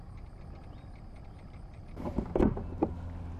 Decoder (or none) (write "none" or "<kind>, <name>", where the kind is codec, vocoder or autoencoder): none